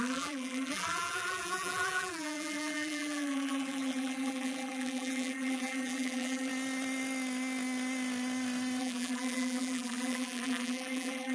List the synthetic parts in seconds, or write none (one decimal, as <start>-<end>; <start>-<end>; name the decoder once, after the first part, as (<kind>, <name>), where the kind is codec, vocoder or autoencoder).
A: 0.0-6.5 (vocoder, BigVGAN v2); 8.8-11.3